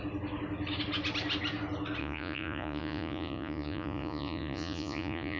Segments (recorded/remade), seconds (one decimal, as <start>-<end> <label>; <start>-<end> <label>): 0.0-2.0 recorded; 2.0-5.4 remade